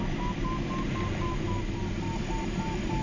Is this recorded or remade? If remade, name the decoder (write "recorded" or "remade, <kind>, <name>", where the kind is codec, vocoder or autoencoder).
recorded